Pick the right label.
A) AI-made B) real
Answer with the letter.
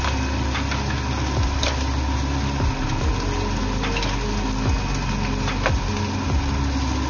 B